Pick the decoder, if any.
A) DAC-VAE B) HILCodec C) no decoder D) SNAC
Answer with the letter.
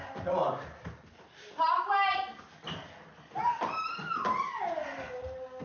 C